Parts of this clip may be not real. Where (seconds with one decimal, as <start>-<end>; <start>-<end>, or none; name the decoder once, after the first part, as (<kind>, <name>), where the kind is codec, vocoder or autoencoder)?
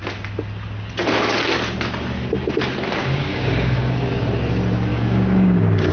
3.0-4.1 (codec, DAC); 4.9-5.9